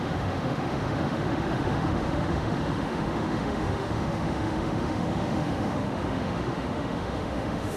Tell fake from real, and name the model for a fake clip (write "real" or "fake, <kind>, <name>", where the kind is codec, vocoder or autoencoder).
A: fake, autoencoder, DAC-VAE